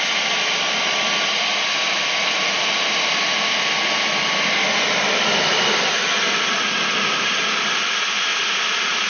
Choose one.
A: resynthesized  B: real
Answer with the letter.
B